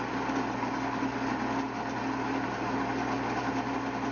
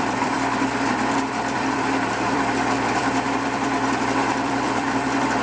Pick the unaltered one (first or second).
first